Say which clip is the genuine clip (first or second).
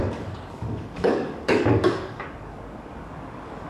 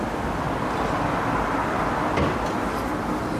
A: second